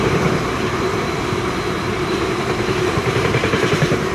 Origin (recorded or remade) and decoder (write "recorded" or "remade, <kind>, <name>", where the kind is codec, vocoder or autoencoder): remade, vocoder, BigVGAN v2